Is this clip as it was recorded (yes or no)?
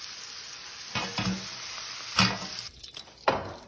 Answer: yes